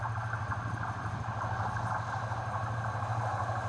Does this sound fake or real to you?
real